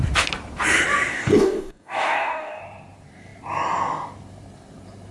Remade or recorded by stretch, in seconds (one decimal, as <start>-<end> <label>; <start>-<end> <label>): 0.0-1.1 recorded; 1.1-2.6 remade; 2.6-5.1 recorded